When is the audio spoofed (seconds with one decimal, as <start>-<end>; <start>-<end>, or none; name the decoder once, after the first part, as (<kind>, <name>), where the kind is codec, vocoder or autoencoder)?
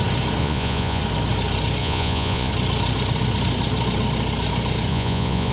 0.4-1.0 (vocoder, Vocos); 1.8-2.5; 4.9-5.5